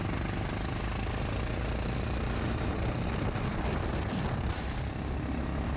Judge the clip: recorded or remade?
recorded